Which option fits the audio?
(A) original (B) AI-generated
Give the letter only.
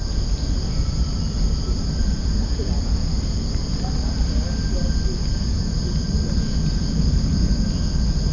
A